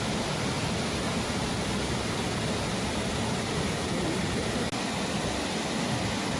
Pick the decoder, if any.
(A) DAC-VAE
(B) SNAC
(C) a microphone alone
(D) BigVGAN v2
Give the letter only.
C